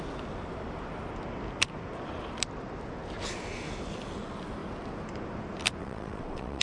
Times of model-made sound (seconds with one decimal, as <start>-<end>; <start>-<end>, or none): 5.8-6.6